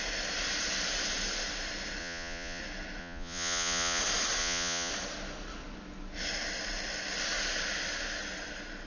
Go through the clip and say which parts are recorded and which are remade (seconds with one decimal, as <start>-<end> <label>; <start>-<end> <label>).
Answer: 0.0-2.0 recorded; 2.0-2.6 remade; 2.6-3.0 recorded; 3.0-4.0 remade; 4.0-4.4 recorded; 4.4-4.9 remade; 4.9-8.9 recorded